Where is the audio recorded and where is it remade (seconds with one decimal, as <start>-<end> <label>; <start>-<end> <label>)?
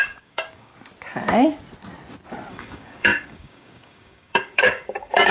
0.0-0.7 remade; 0.7-2.5 recorded; 2.5-5.3 remade